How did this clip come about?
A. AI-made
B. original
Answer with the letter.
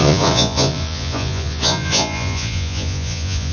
A